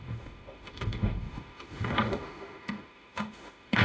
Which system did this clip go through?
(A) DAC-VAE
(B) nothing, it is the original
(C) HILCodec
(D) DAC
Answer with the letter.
A